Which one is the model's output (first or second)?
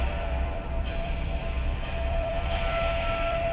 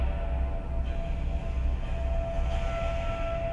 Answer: first